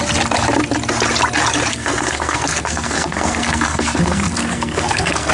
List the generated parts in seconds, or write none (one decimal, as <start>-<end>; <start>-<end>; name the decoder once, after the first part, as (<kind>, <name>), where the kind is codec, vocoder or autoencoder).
1.7-5.3 (codec, SNAC)